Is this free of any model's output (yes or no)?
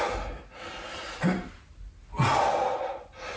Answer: yes